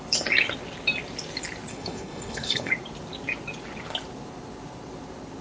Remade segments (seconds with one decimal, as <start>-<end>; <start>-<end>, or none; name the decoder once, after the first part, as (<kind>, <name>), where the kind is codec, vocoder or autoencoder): 1.7-2.7 (codec, HILCodec)